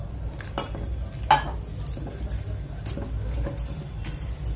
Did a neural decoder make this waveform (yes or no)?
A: no